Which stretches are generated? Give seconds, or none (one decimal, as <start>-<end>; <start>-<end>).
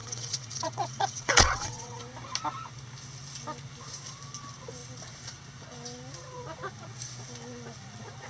0.0-2.0